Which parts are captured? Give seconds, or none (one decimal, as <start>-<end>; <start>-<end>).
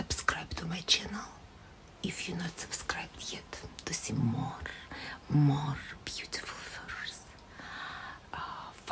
1.6-4.1; 4.7-6.7